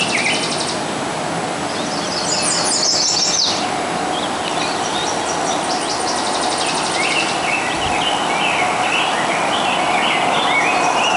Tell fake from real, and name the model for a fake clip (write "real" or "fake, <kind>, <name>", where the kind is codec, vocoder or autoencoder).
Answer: real